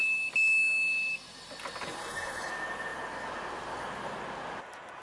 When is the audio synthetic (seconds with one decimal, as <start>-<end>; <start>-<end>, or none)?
2.0-2.5